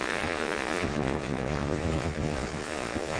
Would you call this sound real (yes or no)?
no